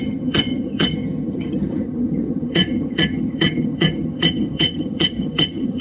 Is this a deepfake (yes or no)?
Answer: yes